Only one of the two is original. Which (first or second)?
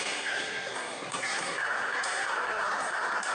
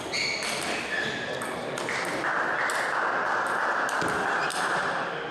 second